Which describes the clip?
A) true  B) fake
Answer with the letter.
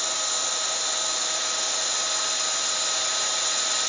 A